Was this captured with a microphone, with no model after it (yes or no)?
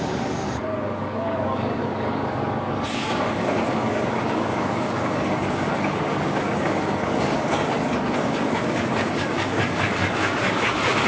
no